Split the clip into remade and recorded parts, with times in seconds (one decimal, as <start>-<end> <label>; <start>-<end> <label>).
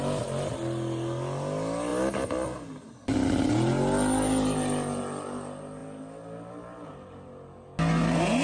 0.0-8.4 recorded